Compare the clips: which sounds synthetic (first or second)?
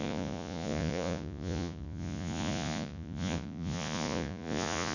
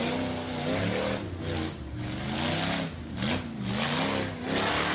first